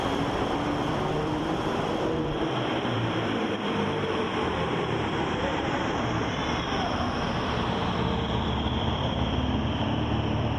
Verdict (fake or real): fake